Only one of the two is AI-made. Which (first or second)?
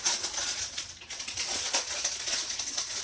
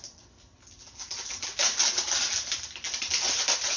first